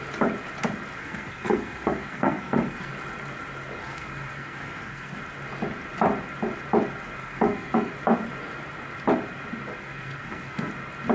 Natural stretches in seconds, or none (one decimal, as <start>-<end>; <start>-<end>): 0.0-1.0; 2.9-3.8; 5.2-7.2; 7.9-9.8; 10.7-11.1